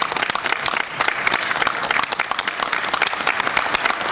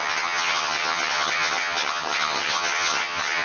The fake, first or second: second